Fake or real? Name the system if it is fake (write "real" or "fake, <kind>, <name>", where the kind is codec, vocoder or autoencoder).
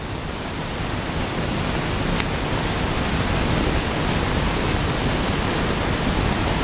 real